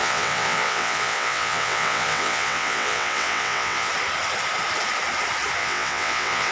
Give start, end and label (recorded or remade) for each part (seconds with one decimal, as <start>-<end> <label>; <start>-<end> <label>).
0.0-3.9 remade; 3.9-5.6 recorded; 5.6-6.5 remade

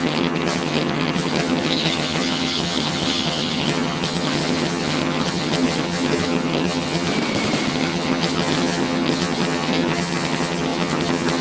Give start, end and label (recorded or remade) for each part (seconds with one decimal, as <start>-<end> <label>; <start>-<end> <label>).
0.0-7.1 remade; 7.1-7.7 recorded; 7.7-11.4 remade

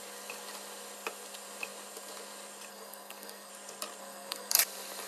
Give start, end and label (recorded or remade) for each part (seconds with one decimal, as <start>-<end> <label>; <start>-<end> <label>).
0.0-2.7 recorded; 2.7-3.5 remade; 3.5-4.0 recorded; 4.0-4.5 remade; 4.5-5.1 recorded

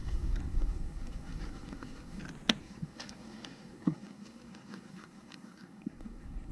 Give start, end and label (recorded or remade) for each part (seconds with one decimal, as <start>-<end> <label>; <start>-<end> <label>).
0.0-2.2 remade; 2.2-2.6 recorded; 2.6-6.5 remade